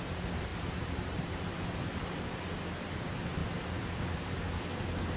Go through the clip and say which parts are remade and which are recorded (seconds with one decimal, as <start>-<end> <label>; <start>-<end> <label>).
0.0-0.5 recorded; 0.5-1.5 remade; 1.5-3.4 recorded; 3.4-4.0 remade; 4.0-5.2 recorded